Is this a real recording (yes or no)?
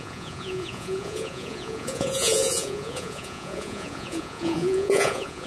no